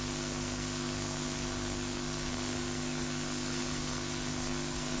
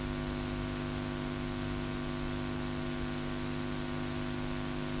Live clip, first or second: second